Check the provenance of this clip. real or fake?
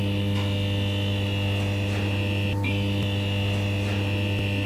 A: real